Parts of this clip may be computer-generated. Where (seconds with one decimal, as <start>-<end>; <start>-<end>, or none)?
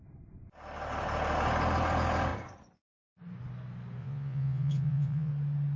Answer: 4.0-5.3